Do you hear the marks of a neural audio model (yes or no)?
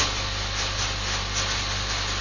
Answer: no